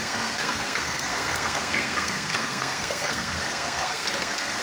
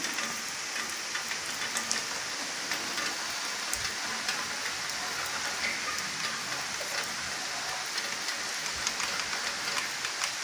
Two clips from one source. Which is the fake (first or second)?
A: first